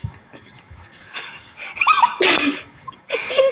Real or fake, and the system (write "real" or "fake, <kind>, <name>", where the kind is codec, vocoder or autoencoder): fake, codec, DAC